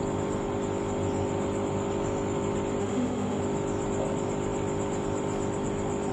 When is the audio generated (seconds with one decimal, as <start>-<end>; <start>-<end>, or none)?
2.8-3.4